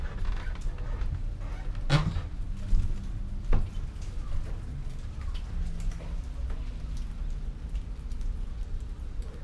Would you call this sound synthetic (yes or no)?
no